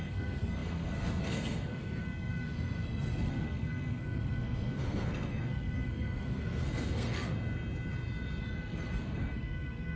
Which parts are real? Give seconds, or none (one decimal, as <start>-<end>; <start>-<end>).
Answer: 7.3-8.4